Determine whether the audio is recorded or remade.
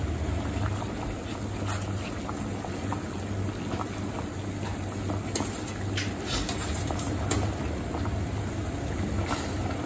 recorded